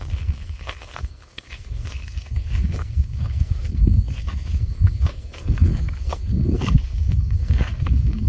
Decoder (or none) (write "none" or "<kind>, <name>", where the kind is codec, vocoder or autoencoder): codec, SNAC